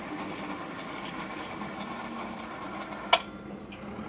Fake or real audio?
real